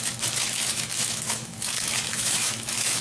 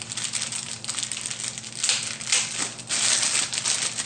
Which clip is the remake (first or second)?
first